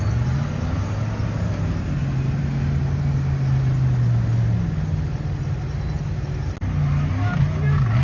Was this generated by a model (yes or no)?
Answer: no